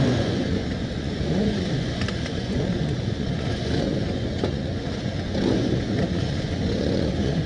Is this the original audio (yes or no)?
no